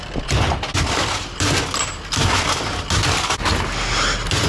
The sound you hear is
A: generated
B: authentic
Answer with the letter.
B